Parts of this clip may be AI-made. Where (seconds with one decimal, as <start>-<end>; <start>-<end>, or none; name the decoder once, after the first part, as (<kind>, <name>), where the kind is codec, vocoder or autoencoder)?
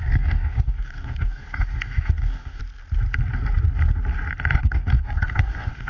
0.0-2.6 (codec, DAC); 4.6-5.9